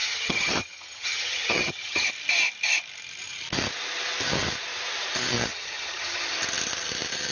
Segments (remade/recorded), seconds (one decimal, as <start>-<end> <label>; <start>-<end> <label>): 0.0-2.1 remade; 2.1-5.5 recorded; 5.5-6.3 remade; 6.3-7.3 recorded